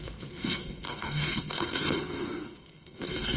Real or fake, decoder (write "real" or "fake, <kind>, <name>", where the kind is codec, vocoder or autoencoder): fake, codec, SNAC